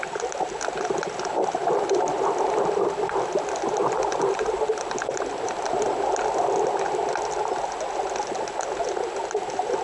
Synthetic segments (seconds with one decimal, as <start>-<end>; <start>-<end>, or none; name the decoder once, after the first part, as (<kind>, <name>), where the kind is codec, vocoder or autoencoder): 1.6-5.7 (vocoder, BigVGAN v2)